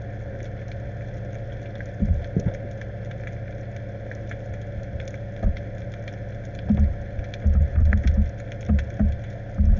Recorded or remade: recorded